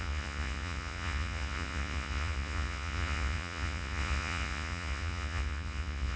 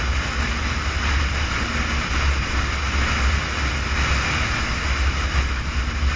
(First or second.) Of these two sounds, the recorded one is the second